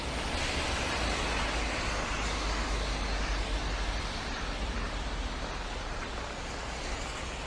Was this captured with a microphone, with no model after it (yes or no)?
yes